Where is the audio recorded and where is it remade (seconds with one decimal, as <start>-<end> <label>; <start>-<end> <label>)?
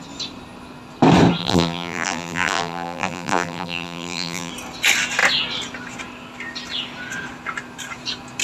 0.0-1.4 recorded; 1.4-4.5 remade; 4.5-8.4 recorded